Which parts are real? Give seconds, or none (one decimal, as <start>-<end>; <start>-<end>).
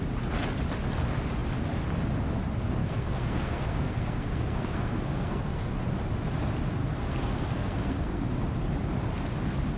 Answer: 0.0-2.8; 5.7-6.8; 8.2-9.8